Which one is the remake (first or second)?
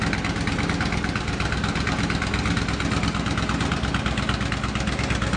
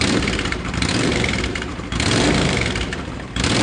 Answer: second